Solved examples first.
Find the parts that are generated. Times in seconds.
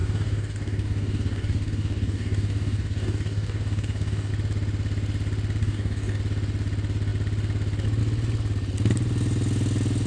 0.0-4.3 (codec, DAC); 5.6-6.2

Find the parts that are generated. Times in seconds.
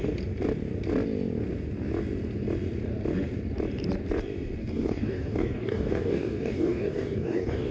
4.6-7.7 (codec, DAC)